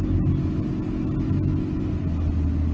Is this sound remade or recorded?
recorded